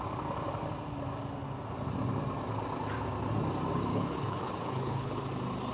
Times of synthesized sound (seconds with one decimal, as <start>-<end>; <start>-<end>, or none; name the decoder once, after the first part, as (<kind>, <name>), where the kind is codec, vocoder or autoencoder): 3.9-5.1 (codec, HILCodec)